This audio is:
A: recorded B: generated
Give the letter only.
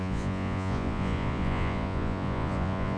B